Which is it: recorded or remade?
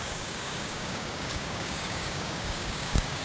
remade